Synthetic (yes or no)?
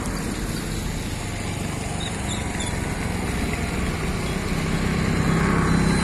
no